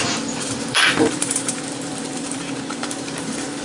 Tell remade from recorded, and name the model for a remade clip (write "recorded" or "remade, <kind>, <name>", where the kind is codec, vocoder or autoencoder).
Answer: remade, vocoder, BigVGAN v2